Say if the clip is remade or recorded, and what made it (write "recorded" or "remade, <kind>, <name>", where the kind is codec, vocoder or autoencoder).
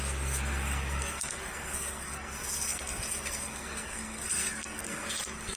remade, codec, SNAC